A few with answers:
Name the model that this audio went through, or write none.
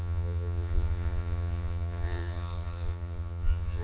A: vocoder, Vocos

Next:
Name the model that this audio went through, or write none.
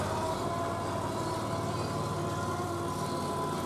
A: none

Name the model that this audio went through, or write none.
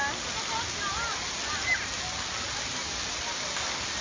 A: none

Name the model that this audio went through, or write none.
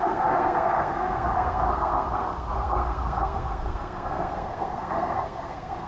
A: codec, SNAC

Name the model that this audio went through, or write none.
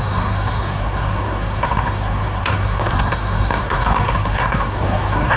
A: codec, SNAC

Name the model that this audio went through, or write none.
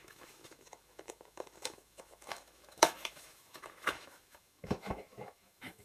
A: autoencoder, DAC-VAE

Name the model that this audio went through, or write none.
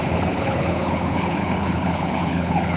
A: codec, HILCodec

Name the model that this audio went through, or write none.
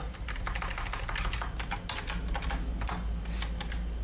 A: none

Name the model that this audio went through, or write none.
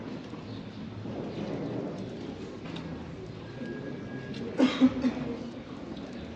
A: none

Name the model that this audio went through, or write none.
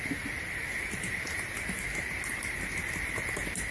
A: none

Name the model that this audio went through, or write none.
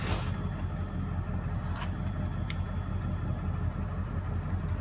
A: none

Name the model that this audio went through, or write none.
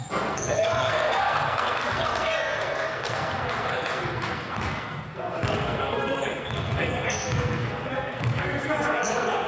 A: codec, SNAC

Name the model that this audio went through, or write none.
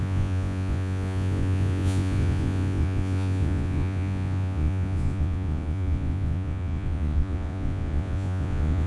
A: vocoder, Vocos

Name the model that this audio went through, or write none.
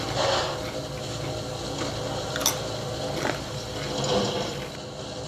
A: none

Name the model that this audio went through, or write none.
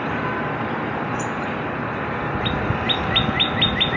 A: none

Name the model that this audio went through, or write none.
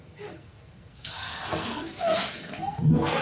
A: codec, SNAC